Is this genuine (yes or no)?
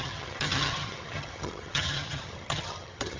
no